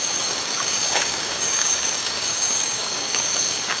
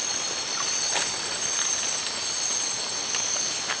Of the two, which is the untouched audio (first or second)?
second